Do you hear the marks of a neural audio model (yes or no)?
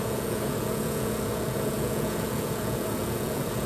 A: yes